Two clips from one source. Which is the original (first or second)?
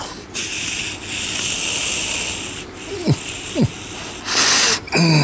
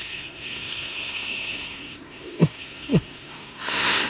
first